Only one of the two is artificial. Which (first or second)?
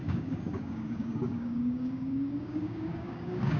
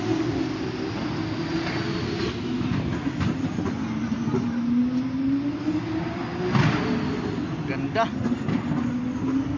first